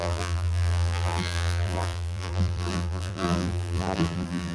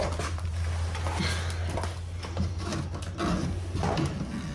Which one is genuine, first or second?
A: second